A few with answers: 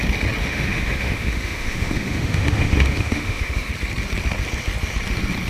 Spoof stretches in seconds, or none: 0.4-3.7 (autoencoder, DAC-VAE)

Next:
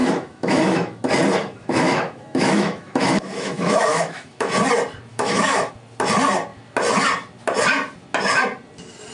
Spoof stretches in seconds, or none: 0.0-1.0 (autoencoder, DAC-VAE); 1.4-4.5; 5.1-5.7

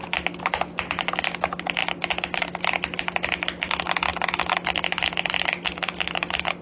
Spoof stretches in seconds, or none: none